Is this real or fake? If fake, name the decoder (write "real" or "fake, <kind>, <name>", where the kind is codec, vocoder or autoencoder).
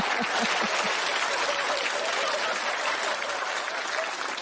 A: real